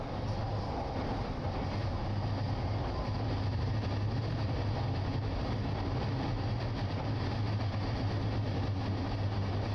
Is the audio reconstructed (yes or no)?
no